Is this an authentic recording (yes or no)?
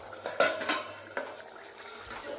yes